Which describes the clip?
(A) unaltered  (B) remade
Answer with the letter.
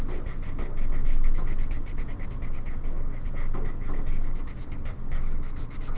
A